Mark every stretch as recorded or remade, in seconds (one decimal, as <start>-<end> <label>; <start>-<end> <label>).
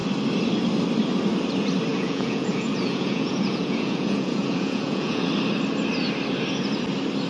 0.0-1.9 recorded; 1.9-5.3 remade; 5.3-7.3 recorded